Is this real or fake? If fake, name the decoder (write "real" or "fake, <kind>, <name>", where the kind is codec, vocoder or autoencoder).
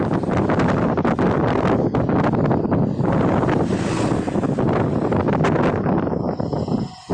real